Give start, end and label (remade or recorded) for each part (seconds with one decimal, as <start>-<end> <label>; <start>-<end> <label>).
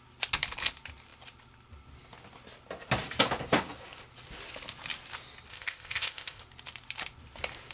0.0-5.5 recorded; 5.5-6.4 remade; 6.4-7.7 recorded